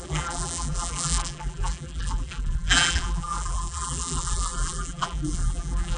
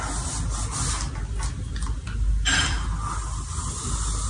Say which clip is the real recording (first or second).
second